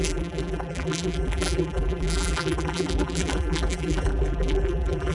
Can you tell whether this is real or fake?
fake